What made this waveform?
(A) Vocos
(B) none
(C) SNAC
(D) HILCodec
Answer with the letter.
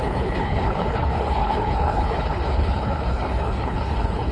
D